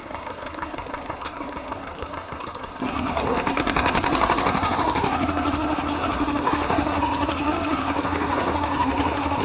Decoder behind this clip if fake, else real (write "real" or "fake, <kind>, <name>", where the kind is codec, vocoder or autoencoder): fake, codec, SNAC